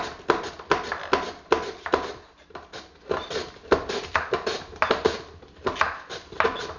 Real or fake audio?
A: real